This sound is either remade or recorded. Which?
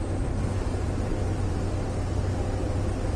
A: recorded